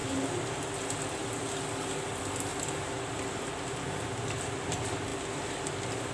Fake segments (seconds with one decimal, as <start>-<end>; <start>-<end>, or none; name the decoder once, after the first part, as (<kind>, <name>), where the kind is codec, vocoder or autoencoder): 1.2-1.9 (vocoder, BigVGAN v2); 2.5-3.2